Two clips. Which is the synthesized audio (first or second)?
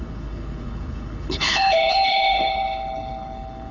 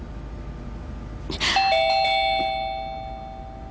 first